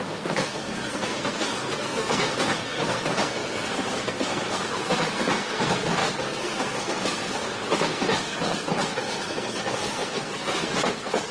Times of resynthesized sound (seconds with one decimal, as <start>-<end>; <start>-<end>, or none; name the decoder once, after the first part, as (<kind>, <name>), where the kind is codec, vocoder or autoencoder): 0.0-11.3 (codec, SNAC)